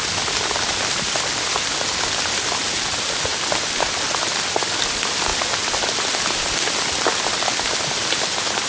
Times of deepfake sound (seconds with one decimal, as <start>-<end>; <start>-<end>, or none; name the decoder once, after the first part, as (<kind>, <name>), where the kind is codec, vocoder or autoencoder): none